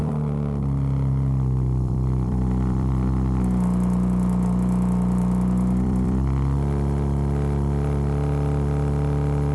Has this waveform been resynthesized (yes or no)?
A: yes